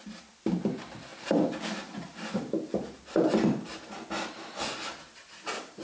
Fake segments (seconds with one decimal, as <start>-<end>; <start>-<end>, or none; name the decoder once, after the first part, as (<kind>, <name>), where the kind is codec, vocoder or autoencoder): none